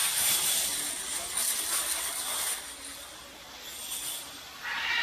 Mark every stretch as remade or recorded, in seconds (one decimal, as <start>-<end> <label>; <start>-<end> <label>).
0.0-5.0 recorded